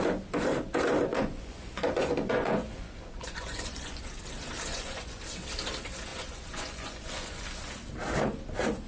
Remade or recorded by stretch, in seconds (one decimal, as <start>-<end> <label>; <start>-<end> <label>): 0.0-1.1 recorded; 1.1-4.0 remade; 4.0-4.7 recorded; 4.7-5.2 remade; 5.2-6.1 recorded; 6.1-7.7 remade; 7.7-8.9 recorded